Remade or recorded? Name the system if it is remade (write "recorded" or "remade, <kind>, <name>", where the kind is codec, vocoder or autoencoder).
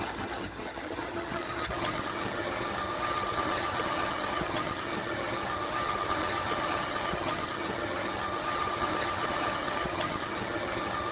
remade, vocoder, HiFi-GAN